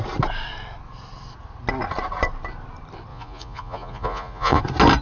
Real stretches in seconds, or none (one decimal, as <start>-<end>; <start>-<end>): 0.0-3.1; 4.6-5.0